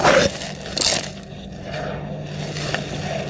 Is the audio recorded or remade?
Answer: recorded